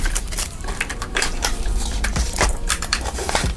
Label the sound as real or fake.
fake